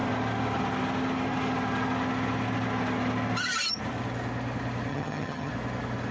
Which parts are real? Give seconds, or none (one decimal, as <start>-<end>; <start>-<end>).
0.0-4.9; 5.5-6.1